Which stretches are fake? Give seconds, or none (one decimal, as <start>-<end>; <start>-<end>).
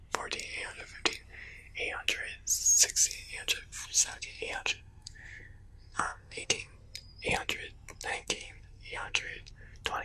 3.8-6.7; 8.1-9.5